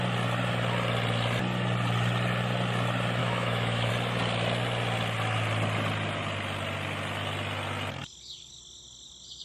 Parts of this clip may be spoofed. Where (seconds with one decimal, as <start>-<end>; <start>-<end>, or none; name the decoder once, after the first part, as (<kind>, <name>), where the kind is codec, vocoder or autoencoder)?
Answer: 3.2-3.9 (autoencoder, DAC-VAE)